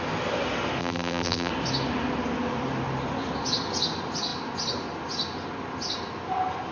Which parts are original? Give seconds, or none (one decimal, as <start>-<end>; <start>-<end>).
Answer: 0.0-0.8; 1.5-6.7